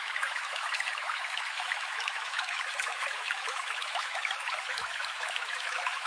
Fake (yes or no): yes